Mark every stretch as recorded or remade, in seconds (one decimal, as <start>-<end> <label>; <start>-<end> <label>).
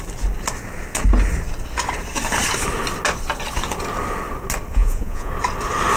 0.0-4.7 recorded; 4.7-5.3 remade; 5.3-6.0 recorded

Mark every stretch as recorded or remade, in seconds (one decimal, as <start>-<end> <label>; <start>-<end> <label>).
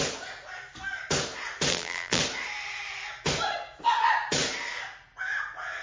0.0-1.7 recorded; 1.7-2.2 remade; 2.2-5.8 recorded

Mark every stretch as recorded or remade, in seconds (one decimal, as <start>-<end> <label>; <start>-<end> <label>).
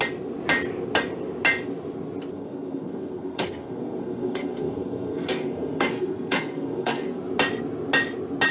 0.0-2.3 recorded; 2.3-7.2 remade; 7.2-8.5 recorded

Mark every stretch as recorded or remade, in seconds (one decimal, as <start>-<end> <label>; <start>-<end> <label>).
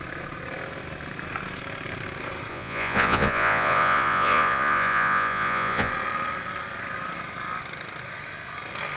0.0-2.5 recorded; 2.5-5.9 remade; 5.9-9.0 recorded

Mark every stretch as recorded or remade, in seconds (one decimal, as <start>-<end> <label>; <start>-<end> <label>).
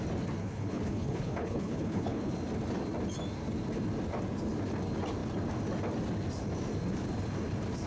0.0-0.4 recorded; 0.4-2.3 remade; 2.3-7.9 recorded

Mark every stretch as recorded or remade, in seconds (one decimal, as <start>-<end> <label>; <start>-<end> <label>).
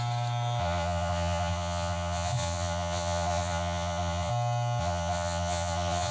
0.0-0.6 recorded; 0.6-4.3 remade; 4.3-4.8 recorded; 4.8-6.1 remade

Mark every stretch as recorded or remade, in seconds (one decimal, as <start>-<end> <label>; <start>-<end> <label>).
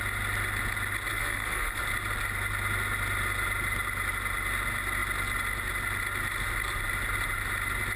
0.0-1.1 recorded; 1.1-1.8 remade; 1.8-8.0 recorded